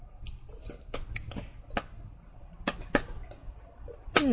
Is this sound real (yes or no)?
yes